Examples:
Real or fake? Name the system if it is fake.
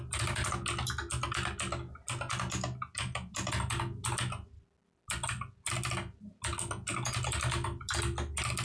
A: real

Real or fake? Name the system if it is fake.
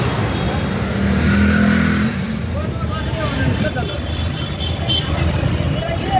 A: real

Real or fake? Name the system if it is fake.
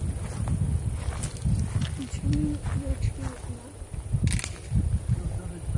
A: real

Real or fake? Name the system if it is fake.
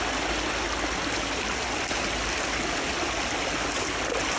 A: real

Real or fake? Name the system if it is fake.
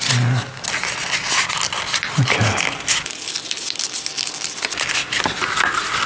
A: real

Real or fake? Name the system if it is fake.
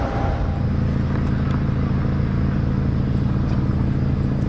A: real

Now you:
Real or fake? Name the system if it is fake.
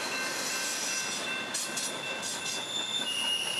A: real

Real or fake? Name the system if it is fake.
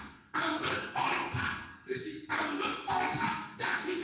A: fake, codec, SNAC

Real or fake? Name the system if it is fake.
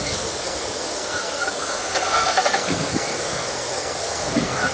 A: fake, codec, SNAC